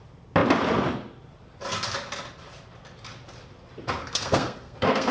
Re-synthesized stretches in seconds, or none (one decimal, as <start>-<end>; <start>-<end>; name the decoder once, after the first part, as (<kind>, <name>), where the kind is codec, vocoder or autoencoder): 4.0-5.1 (codec, SNAC)